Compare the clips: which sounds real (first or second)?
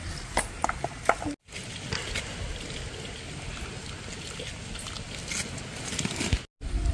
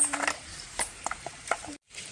first